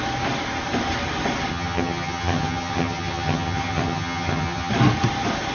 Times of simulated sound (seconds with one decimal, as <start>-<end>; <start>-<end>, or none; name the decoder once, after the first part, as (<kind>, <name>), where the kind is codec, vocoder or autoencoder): 1.5-4.7 (vocoder, HiFi-GAN)